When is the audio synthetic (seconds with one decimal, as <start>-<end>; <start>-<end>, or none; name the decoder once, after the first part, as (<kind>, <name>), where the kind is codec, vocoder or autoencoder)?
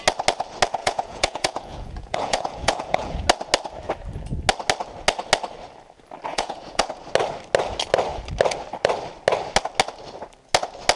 0.8-3.3 (vocoder, Vocos); 6.3-6.9